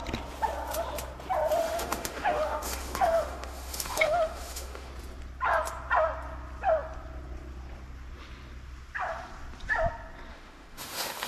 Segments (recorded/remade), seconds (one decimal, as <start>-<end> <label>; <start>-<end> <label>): 0.0-1.6 recorded; 1.6-4.9 remade; 4.9-10.3 recorded; 10.3-11.3 remade